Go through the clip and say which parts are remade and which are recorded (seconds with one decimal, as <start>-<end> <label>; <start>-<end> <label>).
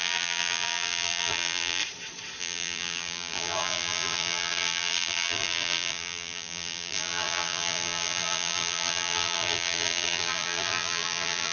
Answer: 0.0-1.8 remade; 1.8-2.4 recorded; 2.4-11.5 remade